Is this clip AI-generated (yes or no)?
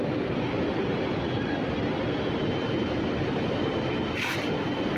no